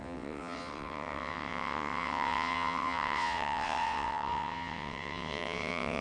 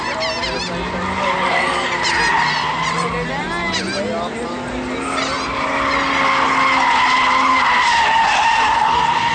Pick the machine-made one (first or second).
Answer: first